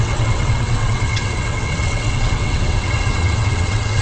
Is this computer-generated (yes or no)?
yes